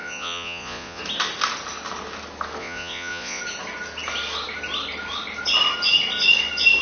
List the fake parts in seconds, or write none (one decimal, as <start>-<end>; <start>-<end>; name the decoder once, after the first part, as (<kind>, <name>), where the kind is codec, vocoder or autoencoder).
0.0-1.0 (vocoder, Vocos); 2.6-3.4